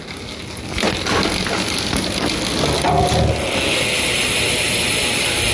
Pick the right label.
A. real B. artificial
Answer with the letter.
A